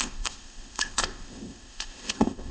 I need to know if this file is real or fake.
fake